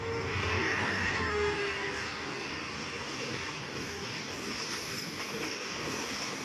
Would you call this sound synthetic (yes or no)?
yes